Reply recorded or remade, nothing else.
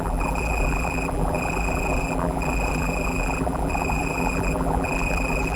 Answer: remade